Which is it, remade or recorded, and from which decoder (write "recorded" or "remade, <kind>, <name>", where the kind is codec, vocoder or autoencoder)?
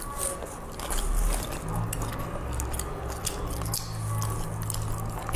recorded